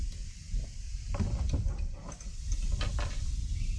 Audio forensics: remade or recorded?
recorded